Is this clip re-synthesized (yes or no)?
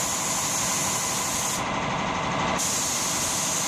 no